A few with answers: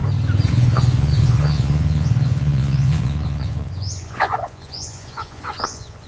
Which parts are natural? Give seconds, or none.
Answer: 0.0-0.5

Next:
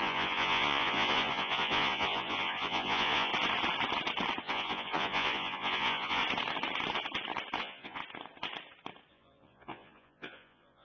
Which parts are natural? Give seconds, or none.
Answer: 3.3-4.4; 6.2-7.6; 8.0-9.1